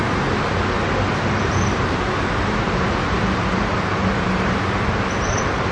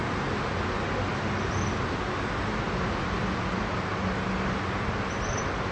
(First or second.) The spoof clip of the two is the first